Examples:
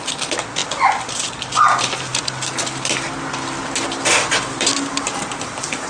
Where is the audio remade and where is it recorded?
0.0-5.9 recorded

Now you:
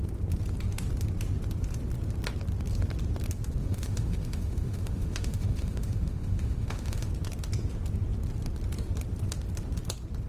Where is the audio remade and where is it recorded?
0.0-3.6 recorded; 3.6-7.1 remade; 7.1-10.3 recorded

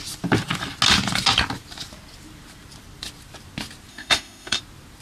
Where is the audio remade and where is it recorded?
0.0-3.9 recorded; 3.9-4.6 remade; 4.6-5.0 recorded

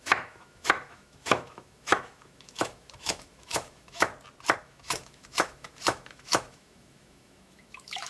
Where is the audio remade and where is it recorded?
0.0-4.1 remade; 4.1-4.6 recorded; 4.6-8.1 remade

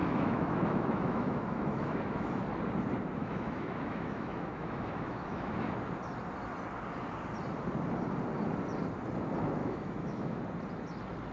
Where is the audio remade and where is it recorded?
0.0-2.4 remade; 2.4-3.2 recorded; 3.2-5.7 remade; 5.7-9.6 recorded; 9.6-10.4 remade; 10.4-11.3 recorded